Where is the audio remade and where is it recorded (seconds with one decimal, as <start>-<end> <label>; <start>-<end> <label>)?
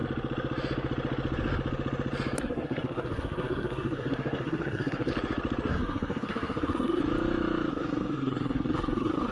0.0-2.4 recorded; 2.4-5.1 remade; 5.1-5.7 recorded; 5.7-7.0 remade; 7.0-7.7 recorded; 7.7-9.3 remade